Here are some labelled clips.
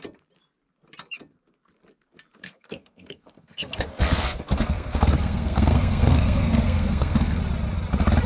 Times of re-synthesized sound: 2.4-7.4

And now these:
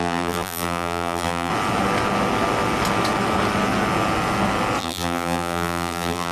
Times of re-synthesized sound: 0.0-1.5; 4.8-6.3

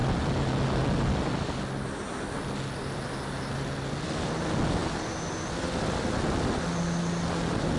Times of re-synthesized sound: none